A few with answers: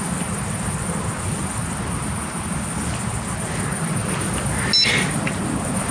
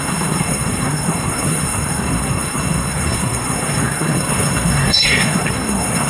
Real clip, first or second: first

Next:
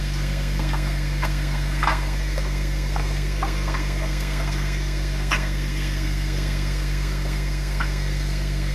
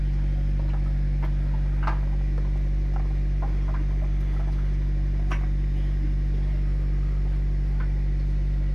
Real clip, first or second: second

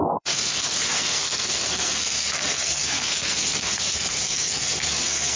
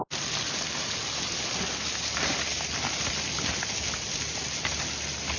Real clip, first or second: second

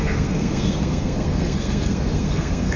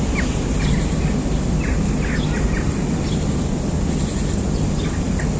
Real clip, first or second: second